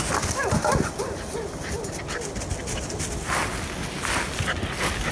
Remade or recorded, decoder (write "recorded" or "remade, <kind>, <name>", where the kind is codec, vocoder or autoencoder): recorded